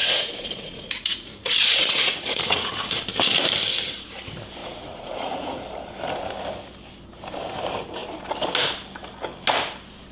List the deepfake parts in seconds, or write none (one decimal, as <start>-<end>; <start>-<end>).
0.0-3.0; 4.6-5.6